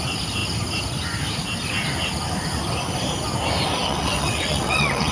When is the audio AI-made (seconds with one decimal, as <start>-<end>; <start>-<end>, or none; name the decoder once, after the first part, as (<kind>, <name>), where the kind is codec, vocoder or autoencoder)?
3.8-5.1 (vocoder, WaveNeXt)